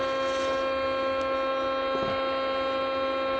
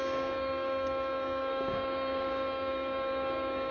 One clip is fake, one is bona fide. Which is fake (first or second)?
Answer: second